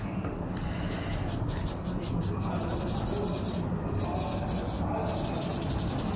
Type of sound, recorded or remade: recorded